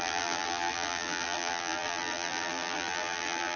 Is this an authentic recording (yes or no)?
no